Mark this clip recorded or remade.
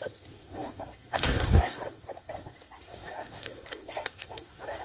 remade